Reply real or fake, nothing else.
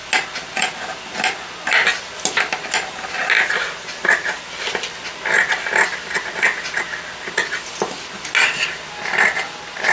real